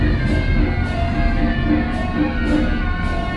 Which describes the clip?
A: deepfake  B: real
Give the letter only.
B